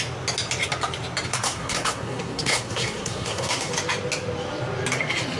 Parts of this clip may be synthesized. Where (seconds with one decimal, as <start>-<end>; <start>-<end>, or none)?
1.3-3.7